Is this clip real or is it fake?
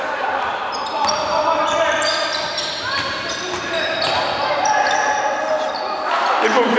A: fake